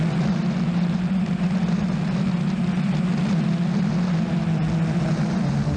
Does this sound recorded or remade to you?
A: recorded